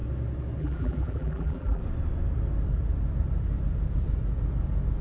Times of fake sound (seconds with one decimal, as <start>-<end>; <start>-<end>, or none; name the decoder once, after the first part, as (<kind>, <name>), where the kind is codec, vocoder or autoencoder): 0.6-1.8 (vocoder, BigVGAN v2)